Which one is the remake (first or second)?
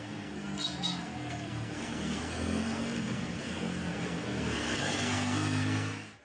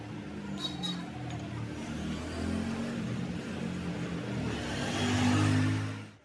first